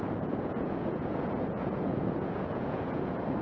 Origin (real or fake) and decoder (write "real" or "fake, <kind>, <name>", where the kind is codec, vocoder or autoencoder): fake, vocoder, Vocos